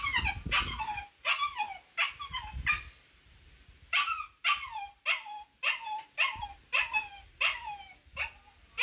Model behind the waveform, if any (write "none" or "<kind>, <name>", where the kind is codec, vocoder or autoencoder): none